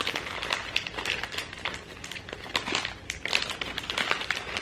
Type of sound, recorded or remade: recorded